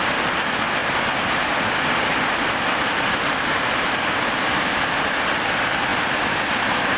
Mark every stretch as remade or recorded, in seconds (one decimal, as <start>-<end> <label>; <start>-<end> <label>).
0.0-7.0 recorded